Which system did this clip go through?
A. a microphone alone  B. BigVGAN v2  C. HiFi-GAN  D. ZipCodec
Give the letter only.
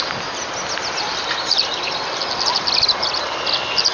A